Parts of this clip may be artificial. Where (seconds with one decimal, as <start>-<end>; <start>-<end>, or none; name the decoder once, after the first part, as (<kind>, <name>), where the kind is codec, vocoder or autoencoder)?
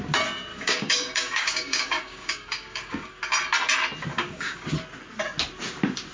0.5-3.2 (codec, DAC); 4.1-4.7